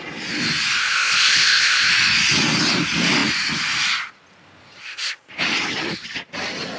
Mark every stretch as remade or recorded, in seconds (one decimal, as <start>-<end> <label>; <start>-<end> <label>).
0.0-0.8 recorded; 0.8-1.9 remade; 1.9-4.8 recorded; 4.8-5.3 remade; 5.3-6.8 recorded